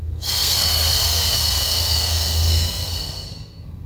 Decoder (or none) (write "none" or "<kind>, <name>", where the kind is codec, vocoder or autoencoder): codec, SNAC